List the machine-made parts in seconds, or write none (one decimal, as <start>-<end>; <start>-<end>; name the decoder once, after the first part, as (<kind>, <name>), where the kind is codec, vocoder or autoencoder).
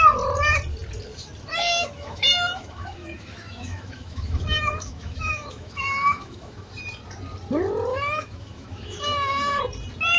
1.5-6.7 (autoencoder, DAC-VAE); 7.9-9.6